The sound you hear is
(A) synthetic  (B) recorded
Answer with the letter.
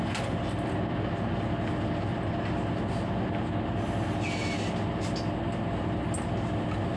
B